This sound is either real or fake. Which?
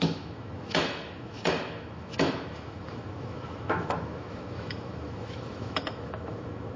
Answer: fake